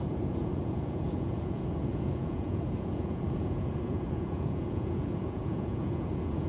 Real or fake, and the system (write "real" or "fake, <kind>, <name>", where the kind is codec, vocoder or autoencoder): fake, vocoder, Vocos